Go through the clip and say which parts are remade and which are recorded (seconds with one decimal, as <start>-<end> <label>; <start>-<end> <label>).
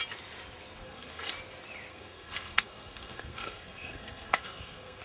0.0-0.8 recorded; 0.8-1.3 remade; 1.3-1.9 recorded; 1.9-5.0 remade